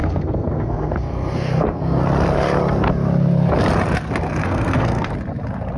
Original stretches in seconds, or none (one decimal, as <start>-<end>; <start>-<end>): 2.0-4.4; 5.1-5.8